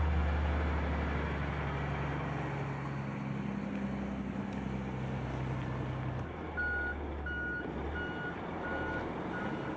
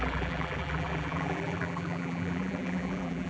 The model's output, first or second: second